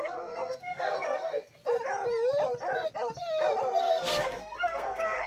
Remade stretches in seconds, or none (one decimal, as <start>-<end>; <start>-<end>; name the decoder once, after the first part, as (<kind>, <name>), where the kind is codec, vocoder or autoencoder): 0.0-1.6 (codec, SNAC); 3.8-5.3